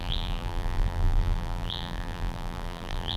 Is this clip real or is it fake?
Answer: fake